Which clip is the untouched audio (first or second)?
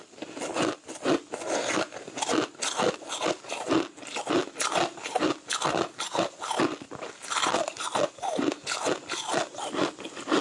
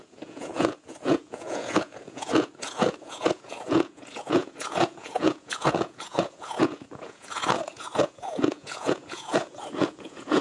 first